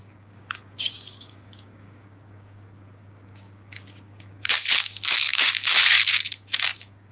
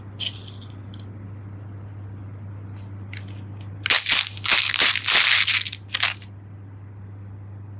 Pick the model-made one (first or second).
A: first